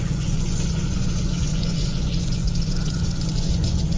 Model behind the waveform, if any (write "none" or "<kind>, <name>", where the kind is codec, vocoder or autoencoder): vocoder, Vocos